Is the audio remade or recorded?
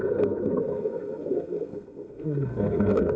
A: remade